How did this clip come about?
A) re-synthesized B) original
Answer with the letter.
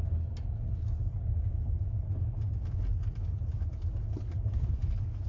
B